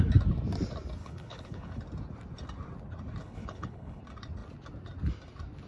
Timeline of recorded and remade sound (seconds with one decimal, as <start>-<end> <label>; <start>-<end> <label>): 0.0-1.0 recorded; 1.0-1.8 remade; 1.8-3.2 recorded; 3.2-4.0 remade; 4.0-5.7 recorded